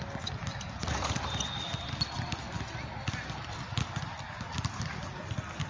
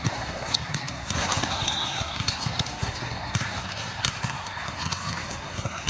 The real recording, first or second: first